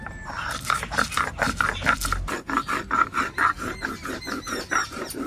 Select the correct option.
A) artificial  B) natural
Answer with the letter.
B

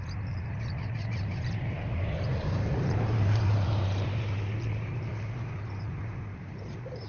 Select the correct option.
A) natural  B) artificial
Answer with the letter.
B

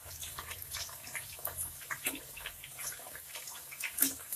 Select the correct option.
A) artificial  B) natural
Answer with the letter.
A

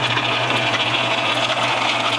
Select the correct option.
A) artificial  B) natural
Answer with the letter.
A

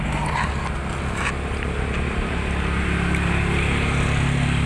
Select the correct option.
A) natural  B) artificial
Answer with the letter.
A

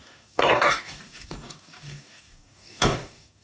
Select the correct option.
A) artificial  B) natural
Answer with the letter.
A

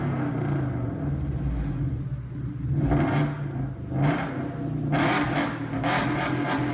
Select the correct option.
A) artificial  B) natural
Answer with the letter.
B